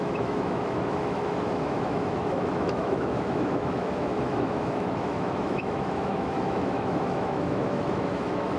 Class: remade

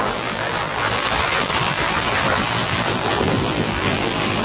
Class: remade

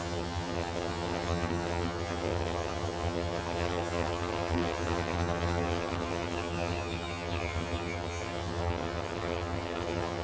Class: remade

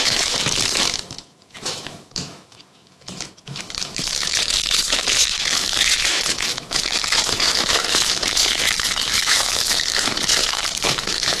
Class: remade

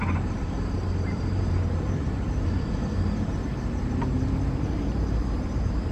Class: remade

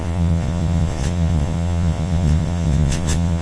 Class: remade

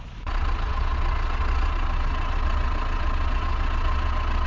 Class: remade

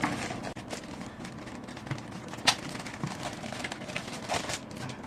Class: recorded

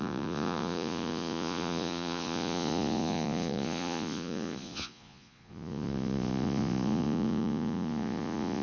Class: remade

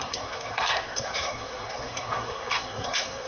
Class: remade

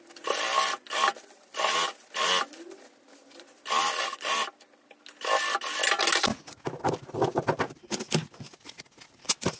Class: recorded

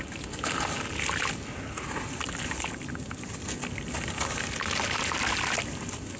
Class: recorded